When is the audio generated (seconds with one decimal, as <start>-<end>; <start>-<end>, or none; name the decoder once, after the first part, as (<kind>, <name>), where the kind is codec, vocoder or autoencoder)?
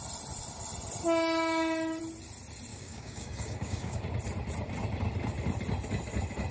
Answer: 2.7-4.0 (codec, DAC)